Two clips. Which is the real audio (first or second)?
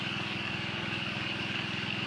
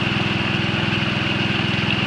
second